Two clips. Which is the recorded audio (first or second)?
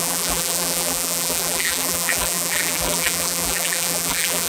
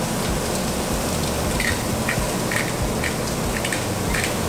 second